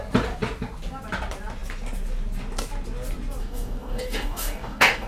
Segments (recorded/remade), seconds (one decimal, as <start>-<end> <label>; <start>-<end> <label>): 0.0-3.4 recorded; 3.4-5.1 remade